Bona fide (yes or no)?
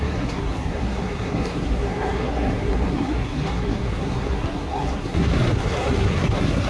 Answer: no